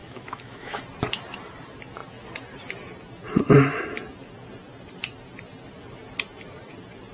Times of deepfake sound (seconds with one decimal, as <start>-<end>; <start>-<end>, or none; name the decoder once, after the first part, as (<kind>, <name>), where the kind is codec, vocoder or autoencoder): 0.0-0.8 (autoencoder, DAC-VAE)

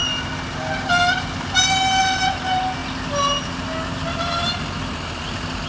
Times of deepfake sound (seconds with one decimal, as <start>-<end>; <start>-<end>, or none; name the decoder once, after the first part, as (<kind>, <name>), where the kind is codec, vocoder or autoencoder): none

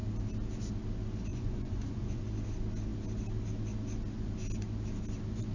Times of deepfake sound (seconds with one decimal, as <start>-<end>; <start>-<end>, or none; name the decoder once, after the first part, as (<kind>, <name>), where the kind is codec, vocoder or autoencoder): 1.3-2.2 (vocoder, Vocos)